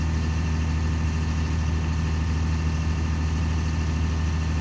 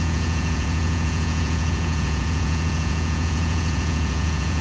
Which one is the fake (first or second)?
second